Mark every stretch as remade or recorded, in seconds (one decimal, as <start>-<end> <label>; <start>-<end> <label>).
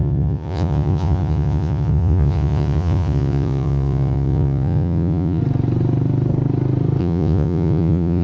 0.0-5.4 remade; 5.4-7.0 recorded; 7.0-8.2 remade